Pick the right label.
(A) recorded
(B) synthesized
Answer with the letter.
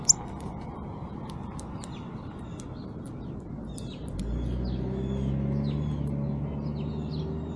A